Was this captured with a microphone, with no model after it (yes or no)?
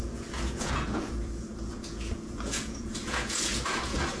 no